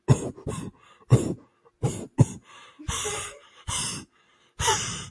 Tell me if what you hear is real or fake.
real